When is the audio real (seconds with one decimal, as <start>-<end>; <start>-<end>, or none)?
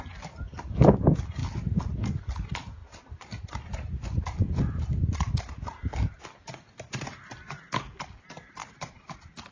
0.0-2.8; 3.9-8.6